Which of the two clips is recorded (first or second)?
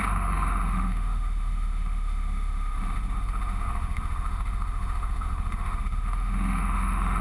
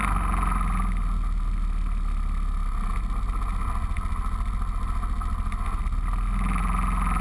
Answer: second